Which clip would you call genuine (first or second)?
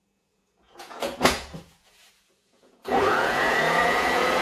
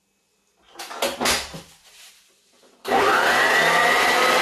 second